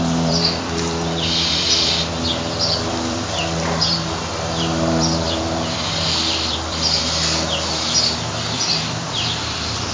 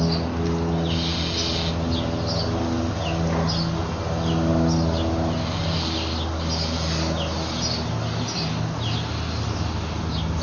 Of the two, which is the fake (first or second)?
first